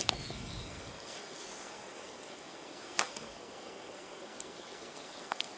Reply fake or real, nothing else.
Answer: fake